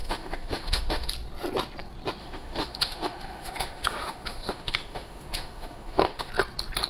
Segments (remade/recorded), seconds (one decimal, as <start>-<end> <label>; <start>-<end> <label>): 0.0-1.1 remade; 1.1-2.2 recorded; 2.2-6.3 remade; 6.3-6.9 recorded